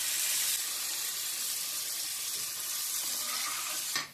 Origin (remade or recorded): recorded